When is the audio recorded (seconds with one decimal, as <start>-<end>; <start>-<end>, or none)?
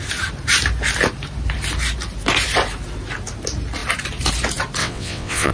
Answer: 0.0-4.8